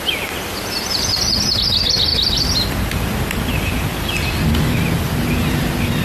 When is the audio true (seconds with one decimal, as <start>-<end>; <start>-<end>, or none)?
0.0-6.0